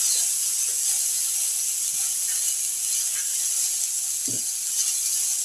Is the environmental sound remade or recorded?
recorded